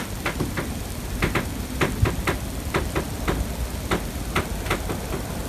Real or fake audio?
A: real